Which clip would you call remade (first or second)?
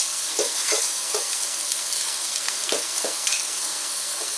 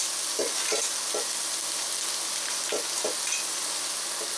first